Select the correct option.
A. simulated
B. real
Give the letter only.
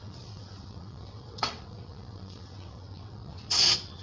A